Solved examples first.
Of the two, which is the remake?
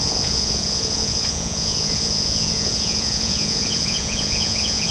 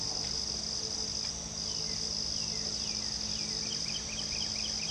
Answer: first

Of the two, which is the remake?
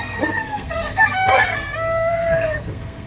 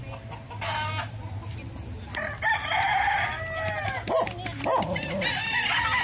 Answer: first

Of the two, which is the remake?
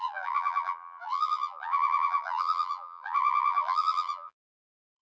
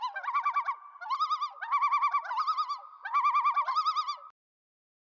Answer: first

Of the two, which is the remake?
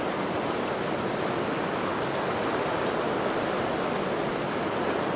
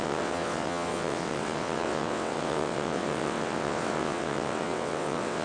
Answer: second